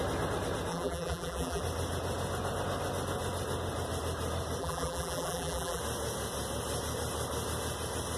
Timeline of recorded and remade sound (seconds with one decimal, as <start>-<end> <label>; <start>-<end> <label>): 0.0-0.7 recorded; 0.7-1.6 remade; 1.6-4.6 recorded; 4.6-5.8 remade; 5.8-8.2 recorded